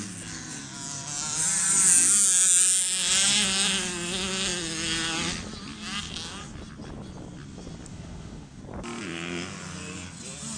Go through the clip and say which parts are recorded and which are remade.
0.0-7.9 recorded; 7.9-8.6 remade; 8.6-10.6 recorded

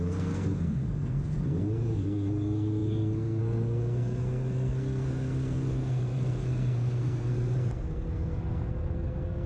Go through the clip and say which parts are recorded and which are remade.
0.0-9.5 remade

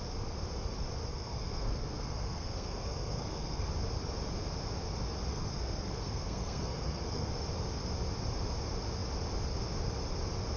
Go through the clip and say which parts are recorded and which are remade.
0.0-1.1 recorded; 1.1-3.7 remade; 3.7-5.3 recorded; 5.3-7.3 remade; 7.3-10.6 recorded

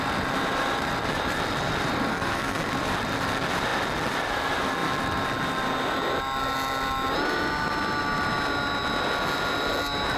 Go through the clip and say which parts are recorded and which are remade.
0.0-2.1 recorded; 2.1-2.7 remade; 2.7-10.2 recorded

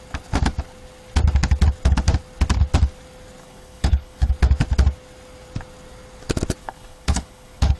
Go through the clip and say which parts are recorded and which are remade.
0.0-3.4 recorded; 3.4-4.3 remade; 4.3-6.6 recorded; 6.6-7.8 remade